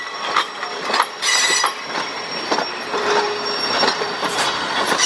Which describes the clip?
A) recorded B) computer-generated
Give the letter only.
A